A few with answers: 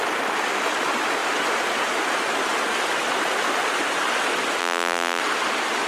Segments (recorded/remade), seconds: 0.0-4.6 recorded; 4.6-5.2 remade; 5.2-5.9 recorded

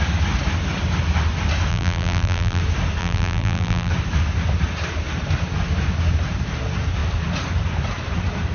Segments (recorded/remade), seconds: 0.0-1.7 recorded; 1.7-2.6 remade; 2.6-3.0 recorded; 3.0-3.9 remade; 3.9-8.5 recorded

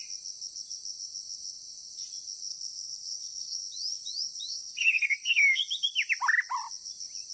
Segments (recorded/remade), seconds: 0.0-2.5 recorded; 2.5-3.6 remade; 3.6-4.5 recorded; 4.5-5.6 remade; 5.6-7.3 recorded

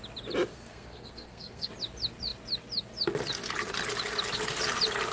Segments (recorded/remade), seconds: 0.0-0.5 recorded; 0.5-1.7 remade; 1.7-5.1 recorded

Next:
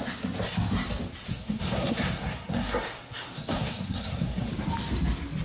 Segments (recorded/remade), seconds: 0.0-1.3 recorded; 1.3-4.5 remade; 4.5-5.4 recorded

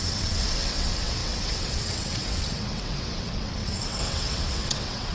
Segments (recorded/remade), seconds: 0.0-5.1 remade

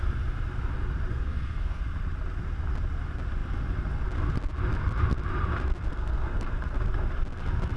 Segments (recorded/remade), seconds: 0.0-1.1 recorded; 1.1-1.8 remade; 1.8-5.9 recorded; 5.9-6.6 remade; 6.6-7.8 recorded

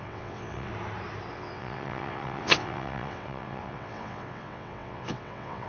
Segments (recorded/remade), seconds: 0.0-0.7 remade; 0.7-1.3 recorded; 1.3-5.7 remade